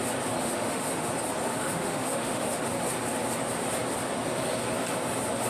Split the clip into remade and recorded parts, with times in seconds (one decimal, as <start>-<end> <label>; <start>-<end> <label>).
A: 0.0-0.4 recorded; 0.4-1.1 remade; 1.1-1.5 recorded; 1.5-2.6 remade; 2.6-5.5 recorded

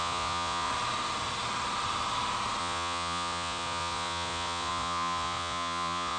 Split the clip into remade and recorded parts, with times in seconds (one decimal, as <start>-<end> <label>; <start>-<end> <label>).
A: 0.0-0.7 remade; 0.7-2.6 recorded; 2.6-6.2 remade